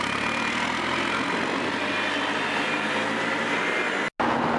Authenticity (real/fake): real